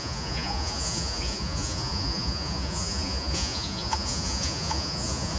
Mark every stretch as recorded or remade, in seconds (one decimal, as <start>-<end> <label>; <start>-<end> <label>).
0.0-5.4 remade